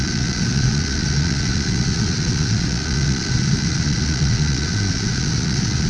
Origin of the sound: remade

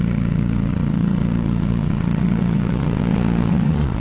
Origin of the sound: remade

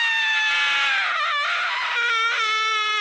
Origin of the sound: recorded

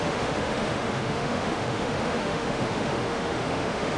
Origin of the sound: remade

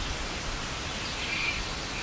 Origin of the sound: recorded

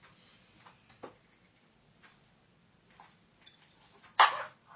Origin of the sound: recorded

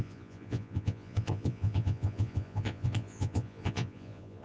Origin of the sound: remade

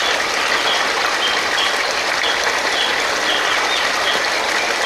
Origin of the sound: recorded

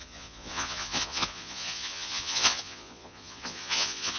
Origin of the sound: remade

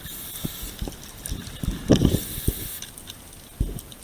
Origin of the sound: recorded